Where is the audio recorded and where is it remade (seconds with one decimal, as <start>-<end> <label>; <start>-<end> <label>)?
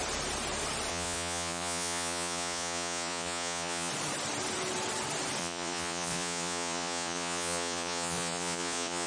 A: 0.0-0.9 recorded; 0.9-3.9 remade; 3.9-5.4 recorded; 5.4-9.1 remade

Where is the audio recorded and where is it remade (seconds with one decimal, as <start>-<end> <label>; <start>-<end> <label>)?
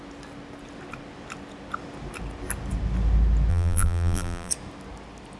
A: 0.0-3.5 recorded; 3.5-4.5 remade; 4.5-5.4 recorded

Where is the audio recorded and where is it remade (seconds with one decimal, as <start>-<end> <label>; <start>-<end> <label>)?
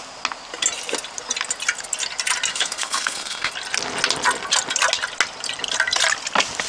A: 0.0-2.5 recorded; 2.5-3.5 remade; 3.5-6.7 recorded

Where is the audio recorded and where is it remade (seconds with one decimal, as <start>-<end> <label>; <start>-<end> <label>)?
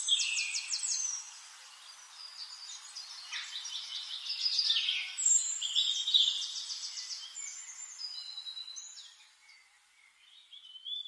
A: 0.0-0.9 recorded; 0.9-2.2 remade; 2.2-8.2 recorded; 8.2-11.1 remade